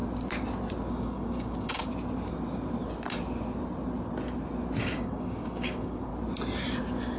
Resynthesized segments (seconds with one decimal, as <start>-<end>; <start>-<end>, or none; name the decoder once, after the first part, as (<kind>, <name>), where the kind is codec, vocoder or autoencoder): 0.9-1.8 (codec, DAC); 4.8-6.1

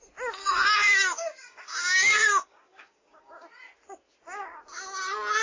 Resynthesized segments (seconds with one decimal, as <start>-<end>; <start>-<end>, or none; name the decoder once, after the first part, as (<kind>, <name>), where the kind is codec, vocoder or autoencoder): 0.4-3.6 (codec, DAC)

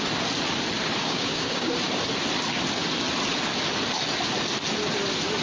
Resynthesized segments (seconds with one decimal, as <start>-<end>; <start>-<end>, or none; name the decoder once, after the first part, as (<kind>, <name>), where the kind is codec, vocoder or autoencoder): 1.0-1.7 (codec, DAC)

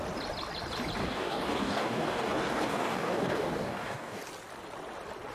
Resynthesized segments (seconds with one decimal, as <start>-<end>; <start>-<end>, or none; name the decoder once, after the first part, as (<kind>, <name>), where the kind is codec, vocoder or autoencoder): 1.0-4.2 (codec, DAC)

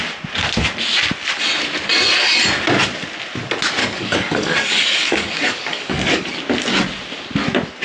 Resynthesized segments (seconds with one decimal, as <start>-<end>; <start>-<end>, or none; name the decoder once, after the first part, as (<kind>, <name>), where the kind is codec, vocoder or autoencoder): 3.8-6.3 (codec, DAC)

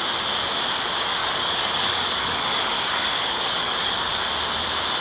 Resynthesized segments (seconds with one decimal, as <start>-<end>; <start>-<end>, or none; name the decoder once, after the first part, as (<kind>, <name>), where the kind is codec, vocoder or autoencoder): 1.2-4.2 (codec, DAC)

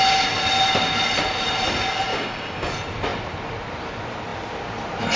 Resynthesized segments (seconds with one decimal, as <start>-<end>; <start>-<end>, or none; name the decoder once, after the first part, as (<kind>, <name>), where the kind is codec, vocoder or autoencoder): 2.1-2.7 (codec, DAC)

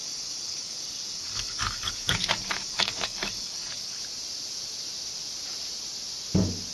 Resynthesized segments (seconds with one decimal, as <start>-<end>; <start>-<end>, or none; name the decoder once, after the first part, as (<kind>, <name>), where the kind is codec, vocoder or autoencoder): 0.0-4.0 (codec, DAC)